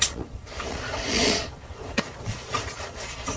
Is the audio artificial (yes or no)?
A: yes